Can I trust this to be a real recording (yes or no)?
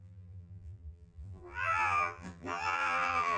no